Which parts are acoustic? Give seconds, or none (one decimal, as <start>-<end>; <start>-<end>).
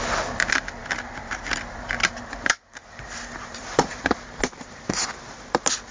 0.0-0.8; 4.3-5.9